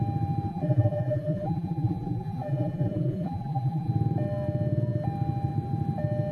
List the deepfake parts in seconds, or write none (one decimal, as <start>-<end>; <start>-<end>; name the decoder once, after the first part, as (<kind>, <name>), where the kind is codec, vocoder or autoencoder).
0.5-3.9 (vocoder, BigVGAN v2)